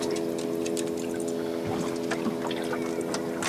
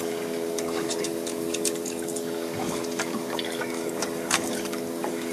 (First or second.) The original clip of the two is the first